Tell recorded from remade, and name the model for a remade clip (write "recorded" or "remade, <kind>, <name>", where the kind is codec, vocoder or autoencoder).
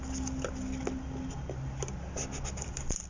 recorded